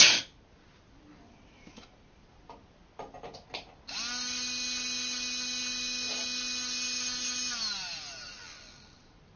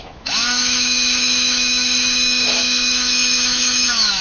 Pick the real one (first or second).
first